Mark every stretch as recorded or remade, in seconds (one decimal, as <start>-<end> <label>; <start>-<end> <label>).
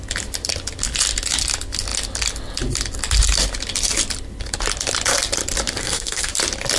0.0-5.8 recorded; 5.8-6.3 remade; 6.3-6.8 recorded